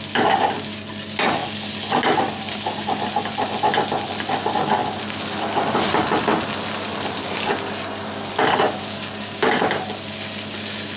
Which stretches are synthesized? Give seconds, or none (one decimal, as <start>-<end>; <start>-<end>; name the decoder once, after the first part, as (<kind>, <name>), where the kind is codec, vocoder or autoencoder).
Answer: none

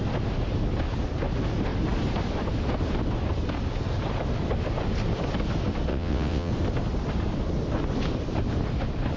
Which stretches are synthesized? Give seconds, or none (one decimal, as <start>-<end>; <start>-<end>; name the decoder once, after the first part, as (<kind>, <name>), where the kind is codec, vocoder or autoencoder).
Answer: 5.9-6.5 (vocoder, WaveNeXt)

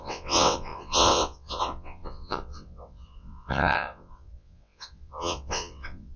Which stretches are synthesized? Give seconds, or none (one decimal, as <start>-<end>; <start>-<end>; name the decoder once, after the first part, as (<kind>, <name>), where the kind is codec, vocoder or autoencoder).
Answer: 0.0-6.2 (vocoder, WaveNeXt)

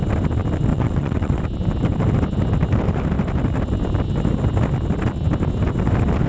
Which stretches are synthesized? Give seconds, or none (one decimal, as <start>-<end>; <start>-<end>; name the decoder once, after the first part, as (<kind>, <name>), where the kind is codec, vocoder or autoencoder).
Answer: 0.7-1.4 (vocoder, WaveNeXt)